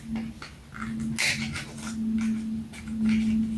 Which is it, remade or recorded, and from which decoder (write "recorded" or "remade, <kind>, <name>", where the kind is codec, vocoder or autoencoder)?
recorded